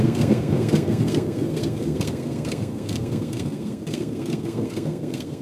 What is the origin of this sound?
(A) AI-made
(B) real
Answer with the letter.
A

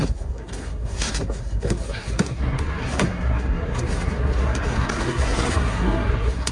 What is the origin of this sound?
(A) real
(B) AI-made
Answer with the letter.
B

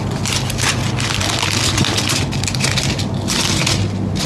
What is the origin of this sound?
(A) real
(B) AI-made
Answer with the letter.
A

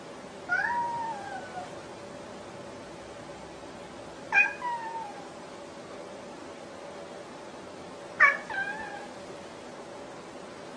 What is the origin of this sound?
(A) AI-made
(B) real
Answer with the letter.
B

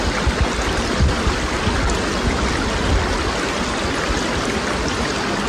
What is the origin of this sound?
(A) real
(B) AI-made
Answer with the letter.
A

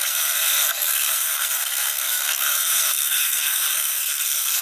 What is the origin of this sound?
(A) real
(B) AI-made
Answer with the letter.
B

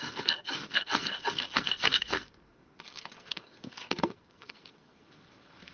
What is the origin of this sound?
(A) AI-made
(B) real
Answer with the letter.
A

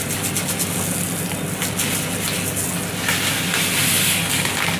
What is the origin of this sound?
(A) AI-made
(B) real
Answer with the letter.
B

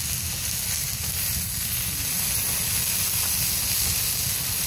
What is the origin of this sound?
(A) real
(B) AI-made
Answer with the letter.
A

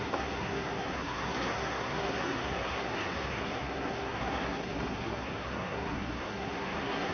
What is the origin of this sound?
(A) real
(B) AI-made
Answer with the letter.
B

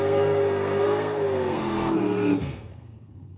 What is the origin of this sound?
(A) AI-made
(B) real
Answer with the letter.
A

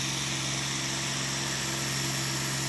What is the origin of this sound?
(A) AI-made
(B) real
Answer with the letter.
B